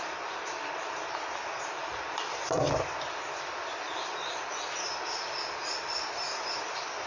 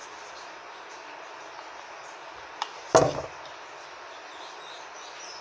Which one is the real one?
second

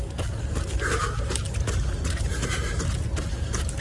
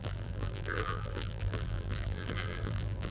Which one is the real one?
first